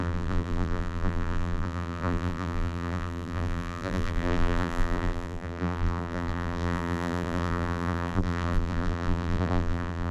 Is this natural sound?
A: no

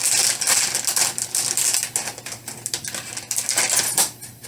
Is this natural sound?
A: yes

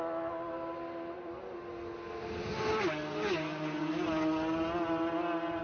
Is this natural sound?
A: yes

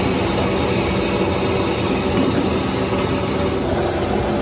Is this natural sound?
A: yes